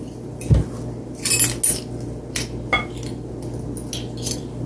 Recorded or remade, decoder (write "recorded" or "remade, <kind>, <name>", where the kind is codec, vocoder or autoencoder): recorded